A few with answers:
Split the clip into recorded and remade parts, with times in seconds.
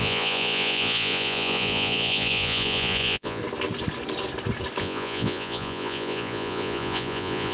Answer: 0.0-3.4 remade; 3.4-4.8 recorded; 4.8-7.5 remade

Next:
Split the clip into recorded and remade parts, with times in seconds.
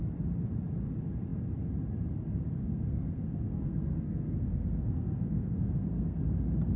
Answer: 0.0-2.6 recorded; 2.6-6.2 remade; 6.2-6.8 recorded